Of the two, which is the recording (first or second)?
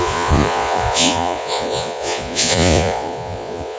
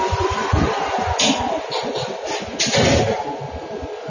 second